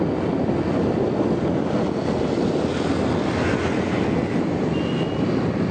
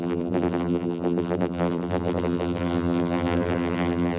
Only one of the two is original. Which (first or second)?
first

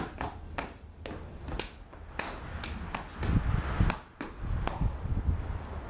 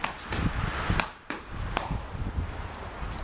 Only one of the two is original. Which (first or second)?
first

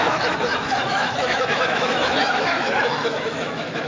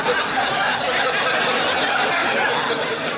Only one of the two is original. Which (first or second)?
second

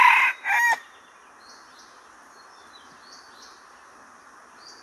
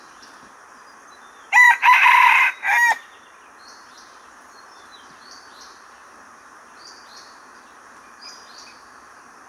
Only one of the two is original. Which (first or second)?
first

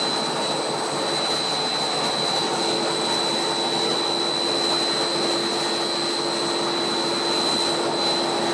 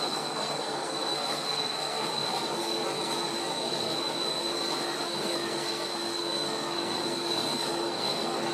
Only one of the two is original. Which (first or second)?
first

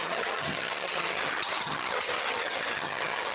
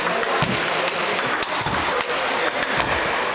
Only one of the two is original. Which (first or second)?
second